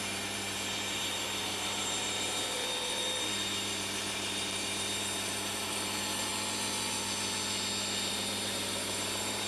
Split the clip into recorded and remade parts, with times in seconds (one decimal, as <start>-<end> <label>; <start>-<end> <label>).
0.0-6.3 remade; 6.3-8.1 recorded; 8.1-9.5 remade